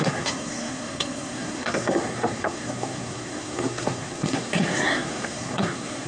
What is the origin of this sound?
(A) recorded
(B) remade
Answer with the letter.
B